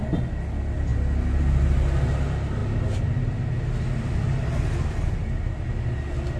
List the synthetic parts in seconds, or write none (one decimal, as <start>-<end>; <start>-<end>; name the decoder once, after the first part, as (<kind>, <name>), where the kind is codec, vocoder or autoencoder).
none